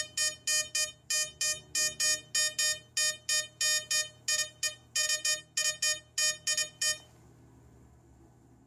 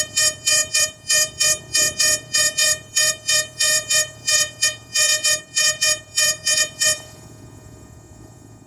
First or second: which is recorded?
first